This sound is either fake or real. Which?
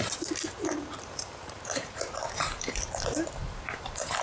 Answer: fake